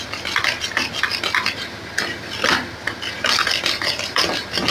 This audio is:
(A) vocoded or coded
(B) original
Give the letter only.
B